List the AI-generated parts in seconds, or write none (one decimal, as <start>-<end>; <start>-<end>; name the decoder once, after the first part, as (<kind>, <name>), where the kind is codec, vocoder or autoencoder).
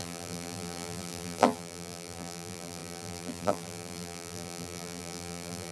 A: 0.0-5.7 (vocoder, BigVGAN v2)